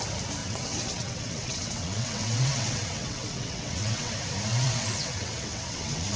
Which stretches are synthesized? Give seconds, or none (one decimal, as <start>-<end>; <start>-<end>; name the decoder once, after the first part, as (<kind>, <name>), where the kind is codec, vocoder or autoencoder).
0.4-4.1 (vocoder, WaveNeXt); 4.5-6.2